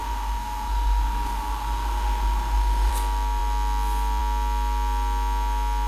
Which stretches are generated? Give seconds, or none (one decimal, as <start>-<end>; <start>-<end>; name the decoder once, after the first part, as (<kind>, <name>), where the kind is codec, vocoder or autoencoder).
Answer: 0.0-2.9 (codec, SNAC)